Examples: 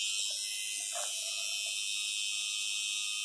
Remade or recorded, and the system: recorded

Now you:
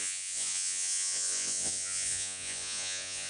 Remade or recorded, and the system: remade, vocoder, Vocos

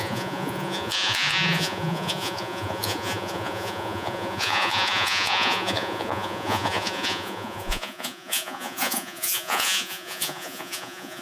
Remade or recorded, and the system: remade, vocoder, Vocos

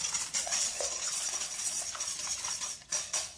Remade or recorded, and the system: remade, vocoder, Vocos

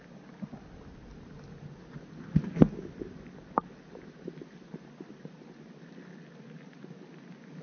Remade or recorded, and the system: recorded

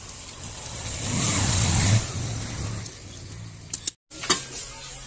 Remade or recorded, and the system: recorded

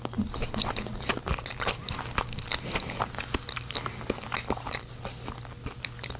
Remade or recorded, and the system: recorded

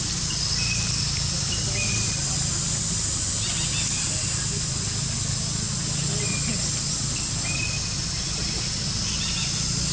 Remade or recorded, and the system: recorded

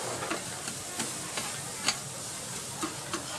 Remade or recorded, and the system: recorded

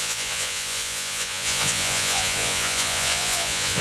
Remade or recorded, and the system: remade, vocoder, Vocos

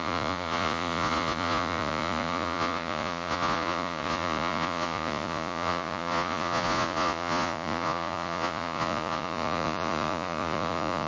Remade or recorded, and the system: remade, vocoder, Vocos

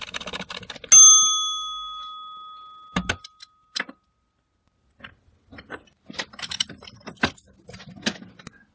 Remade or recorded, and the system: recorded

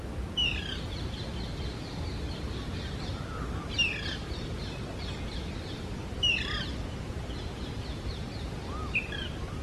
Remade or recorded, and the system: recorded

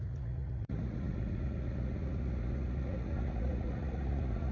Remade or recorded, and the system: remade, vocoder, Vocos